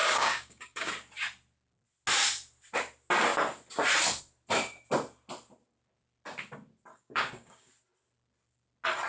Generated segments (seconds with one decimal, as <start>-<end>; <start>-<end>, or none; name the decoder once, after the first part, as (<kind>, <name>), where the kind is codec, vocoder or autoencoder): 0.0-0.9 (codec, DAC); 6.9-7.7